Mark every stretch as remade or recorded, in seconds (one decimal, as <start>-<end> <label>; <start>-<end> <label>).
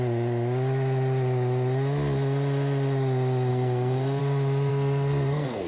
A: 0.0-3.5 recorded; 3.5-4.2 remade; 4.2-4.7 recorded; 4.7-5.7 remade